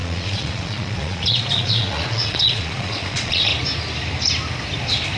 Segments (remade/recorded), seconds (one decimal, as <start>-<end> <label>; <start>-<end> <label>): 0.0-3.5 remade; 3.5-5.2 recorded